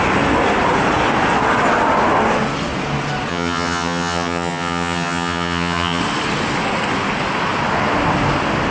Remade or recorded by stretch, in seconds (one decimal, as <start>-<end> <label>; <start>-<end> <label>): 0.0-3.3 recorded; 3.3-6.0 remade; 6.0-8.7 recorded